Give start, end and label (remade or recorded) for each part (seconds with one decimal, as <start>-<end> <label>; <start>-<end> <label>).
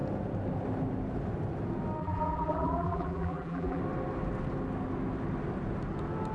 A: 0.0-2.0 recorded; 2.0-3.8 remade; 3.8-6.3 recorded